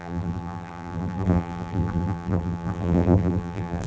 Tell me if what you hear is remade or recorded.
remade